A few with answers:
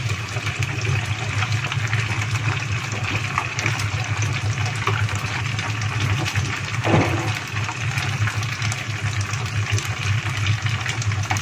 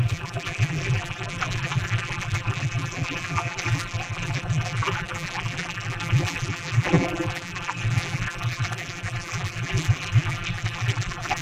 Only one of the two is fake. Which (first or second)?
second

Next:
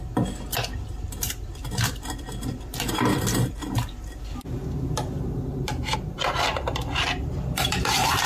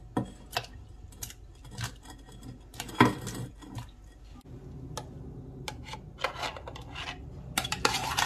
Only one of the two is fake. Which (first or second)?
first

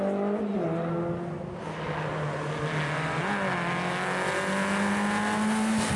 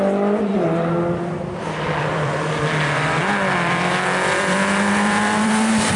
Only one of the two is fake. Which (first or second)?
second